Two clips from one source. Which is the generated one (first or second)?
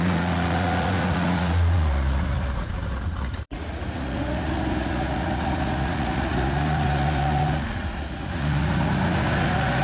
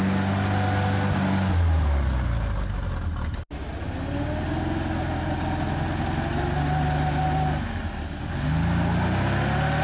first